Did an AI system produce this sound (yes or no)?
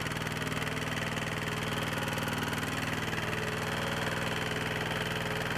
no